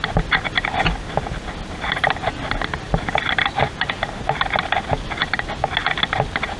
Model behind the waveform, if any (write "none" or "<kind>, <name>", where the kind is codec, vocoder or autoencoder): none